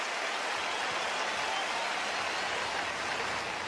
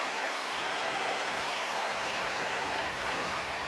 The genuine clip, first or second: first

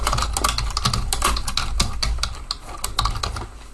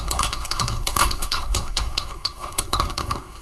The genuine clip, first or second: first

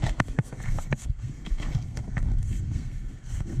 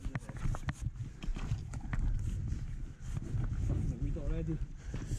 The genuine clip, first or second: second